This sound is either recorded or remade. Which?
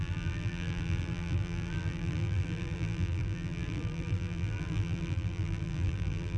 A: remade